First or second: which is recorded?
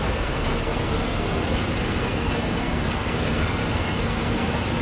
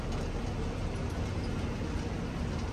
second